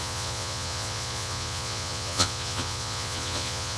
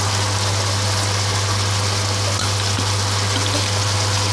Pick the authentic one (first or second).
second